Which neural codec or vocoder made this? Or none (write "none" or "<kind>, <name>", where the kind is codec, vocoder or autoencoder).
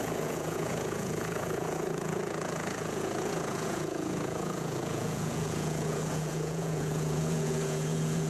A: vocoder, Vocos